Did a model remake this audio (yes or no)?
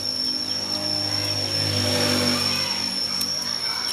no